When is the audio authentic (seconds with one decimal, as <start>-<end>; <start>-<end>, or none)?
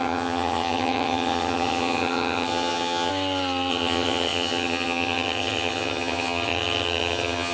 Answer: 3.1-3.7